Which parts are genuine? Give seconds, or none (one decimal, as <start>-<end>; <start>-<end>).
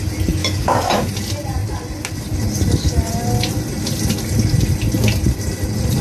0.0-0.4; 1.1-6.0